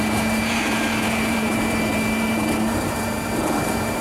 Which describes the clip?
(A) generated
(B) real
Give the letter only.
A